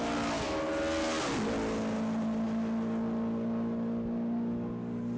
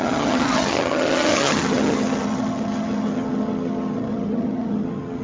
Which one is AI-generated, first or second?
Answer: second